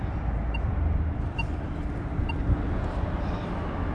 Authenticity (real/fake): real